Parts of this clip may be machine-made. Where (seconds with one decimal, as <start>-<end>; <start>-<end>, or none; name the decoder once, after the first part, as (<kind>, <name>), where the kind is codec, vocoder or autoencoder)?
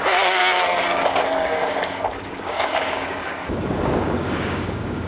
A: 0.0-0.4 (codec, DAC); 0.9-5.1